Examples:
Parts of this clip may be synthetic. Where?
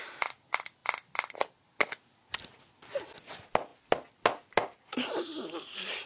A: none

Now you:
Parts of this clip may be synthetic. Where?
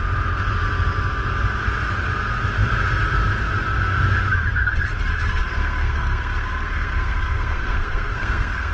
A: 5.1-8.7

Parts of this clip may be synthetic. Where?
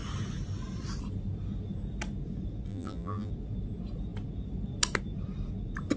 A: 2.7-3.3